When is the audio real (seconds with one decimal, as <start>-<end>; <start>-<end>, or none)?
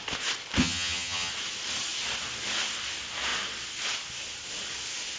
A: 0.0-0.6; 1.3-5.2